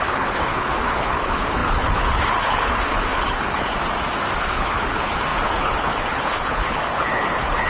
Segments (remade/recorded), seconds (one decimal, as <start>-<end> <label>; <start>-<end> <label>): 0.0-3.7 remade; 3.7-4.4 recorded; 4.4-7.7 remade